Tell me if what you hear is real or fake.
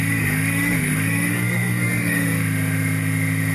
fake